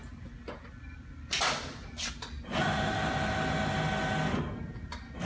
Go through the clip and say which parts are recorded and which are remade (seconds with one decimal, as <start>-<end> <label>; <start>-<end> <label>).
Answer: 0.0-5.3 recorded